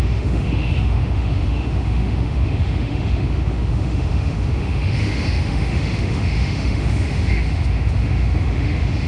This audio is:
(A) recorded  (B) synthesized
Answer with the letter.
B